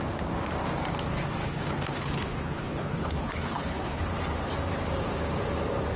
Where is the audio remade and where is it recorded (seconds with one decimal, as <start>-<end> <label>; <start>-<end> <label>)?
0.0-1.4 recorded; 1.4-4.0 remade; 4.0-6.0 recorded